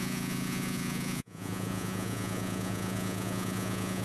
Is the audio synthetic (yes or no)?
yes